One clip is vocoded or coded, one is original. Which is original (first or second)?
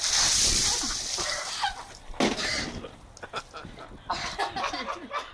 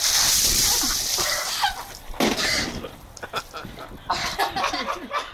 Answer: first